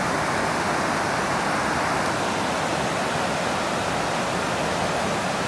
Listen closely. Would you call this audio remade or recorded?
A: recorded